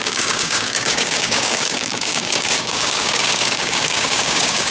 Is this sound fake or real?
fake